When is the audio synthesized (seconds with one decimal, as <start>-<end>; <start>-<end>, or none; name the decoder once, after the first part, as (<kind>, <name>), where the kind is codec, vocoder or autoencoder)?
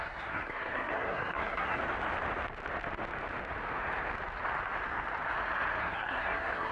0.0-1.8 (codec, SNAC); 5.8-6.7